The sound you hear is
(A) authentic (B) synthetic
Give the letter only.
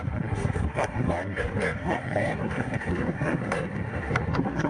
B